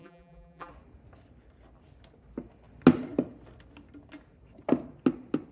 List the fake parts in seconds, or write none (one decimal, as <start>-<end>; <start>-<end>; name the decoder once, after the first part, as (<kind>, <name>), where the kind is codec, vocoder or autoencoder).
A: 0.0-0.7 (vocoder, BigVGAN v2)